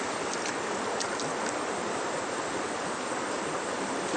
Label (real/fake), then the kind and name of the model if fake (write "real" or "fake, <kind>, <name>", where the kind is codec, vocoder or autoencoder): real